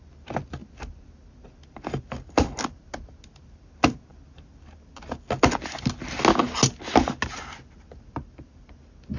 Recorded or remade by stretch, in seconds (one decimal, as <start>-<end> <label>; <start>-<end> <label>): 0.0-9.2 recorded